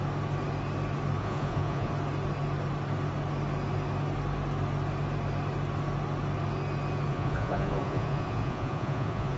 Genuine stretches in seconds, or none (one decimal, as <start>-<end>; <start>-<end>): 0.0-1.2; 1.9-7.1